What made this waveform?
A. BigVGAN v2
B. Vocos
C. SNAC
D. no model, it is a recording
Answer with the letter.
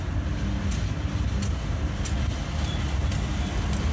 D